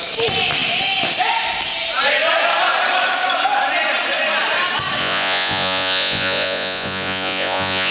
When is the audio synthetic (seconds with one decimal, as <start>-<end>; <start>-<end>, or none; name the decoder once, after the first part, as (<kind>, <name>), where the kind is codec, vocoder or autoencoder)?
5.0-7.9 (vocoder, Vocos)